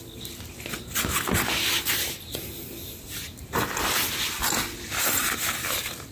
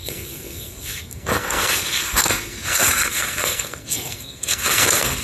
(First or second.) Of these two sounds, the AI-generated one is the second